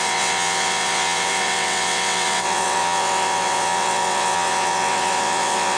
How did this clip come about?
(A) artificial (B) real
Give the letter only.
A